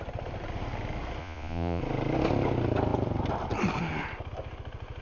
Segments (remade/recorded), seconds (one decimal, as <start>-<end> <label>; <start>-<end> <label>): 0.0-1.2 recorded; 1.2-1.8 remade; 1.8-5.0 recorded